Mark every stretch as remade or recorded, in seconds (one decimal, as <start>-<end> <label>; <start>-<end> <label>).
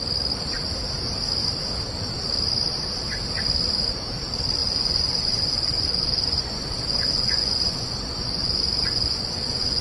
0.0-4.6 recorded; 4.6-9.8 remade